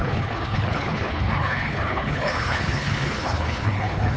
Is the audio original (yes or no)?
no